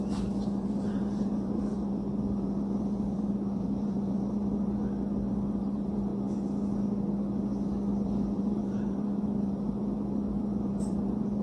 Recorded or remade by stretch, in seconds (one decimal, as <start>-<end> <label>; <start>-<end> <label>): 0.0-4.8 remade; 4.8-5.3 recorded; 5.3-6.1 remade; 6.1-8.0 recorded; 8.0-11.4 remade